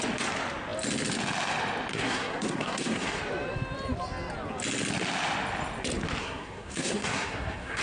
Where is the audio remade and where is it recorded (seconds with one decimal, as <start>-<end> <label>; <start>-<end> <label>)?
0.0-1.9 recorded; 1.9-3.2 remade; 3.2-6.2 recorded; 6.2-7.8 remade